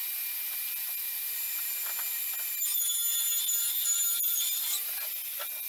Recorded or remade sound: recorded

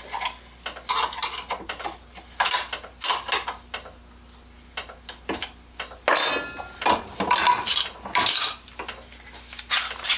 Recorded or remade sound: recorded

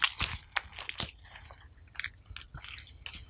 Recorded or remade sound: recorded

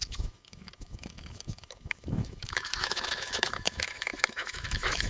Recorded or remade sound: remade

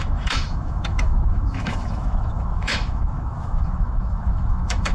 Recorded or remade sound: remade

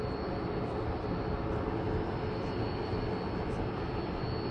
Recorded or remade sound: recorded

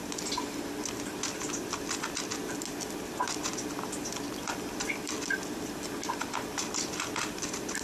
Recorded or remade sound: recorded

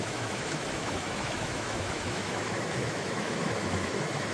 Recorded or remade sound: remade